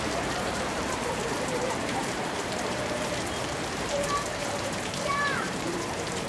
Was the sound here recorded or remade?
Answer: remade